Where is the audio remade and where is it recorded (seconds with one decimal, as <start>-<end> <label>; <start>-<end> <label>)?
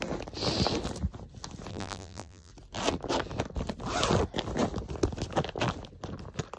0.0-1.7 recorded; 1.7-2.5 remade; 2.5-6.6 recorded